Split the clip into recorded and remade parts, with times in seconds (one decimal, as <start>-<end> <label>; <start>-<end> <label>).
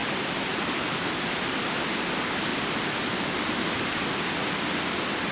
0.0-5.3 recorded